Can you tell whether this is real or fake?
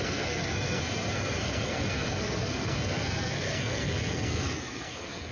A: fake